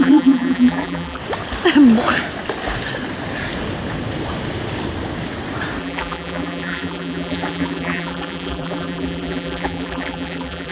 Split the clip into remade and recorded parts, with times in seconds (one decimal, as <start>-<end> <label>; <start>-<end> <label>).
0.0-1.2 remade; 1.2-5.8 recorded; 5.8-10.7 remade